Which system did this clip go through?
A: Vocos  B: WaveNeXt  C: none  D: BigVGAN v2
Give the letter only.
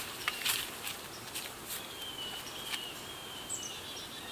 C